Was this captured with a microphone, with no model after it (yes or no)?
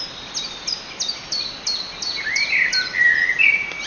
yes